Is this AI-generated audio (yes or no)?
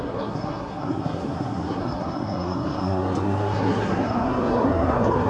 yes